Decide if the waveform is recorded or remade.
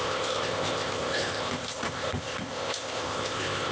remade